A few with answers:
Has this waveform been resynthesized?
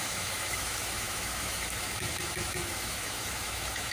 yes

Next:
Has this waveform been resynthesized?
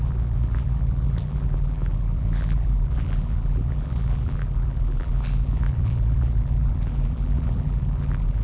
yes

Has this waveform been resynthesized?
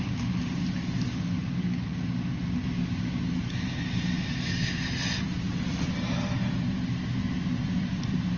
no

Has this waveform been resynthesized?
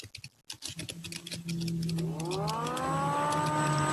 no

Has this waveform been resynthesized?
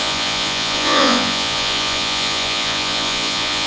yes